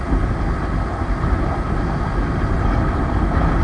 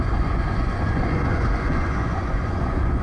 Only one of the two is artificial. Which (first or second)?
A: second